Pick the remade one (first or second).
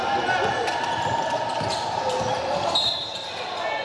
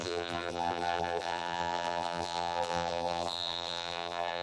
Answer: second